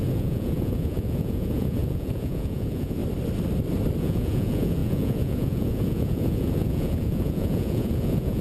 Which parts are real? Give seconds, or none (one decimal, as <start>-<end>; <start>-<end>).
3.0-4.0